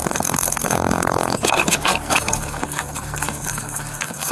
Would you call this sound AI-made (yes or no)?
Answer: yes